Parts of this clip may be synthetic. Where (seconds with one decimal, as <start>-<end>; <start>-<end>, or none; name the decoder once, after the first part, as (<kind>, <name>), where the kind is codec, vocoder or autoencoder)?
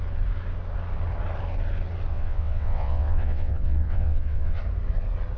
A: 2.1-4.6 (vocoder, WaveNeXt)